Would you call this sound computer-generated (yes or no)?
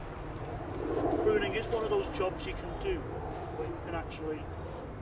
no